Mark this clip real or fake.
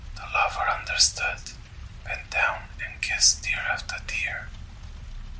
real